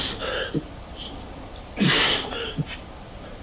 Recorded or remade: remade